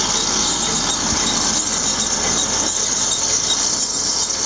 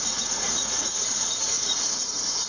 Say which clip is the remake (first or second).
second